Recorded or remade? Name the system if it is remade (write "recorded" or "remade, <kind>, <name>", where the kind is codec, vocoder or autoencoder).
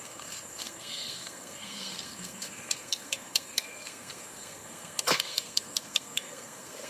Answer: remade, codec, SNAC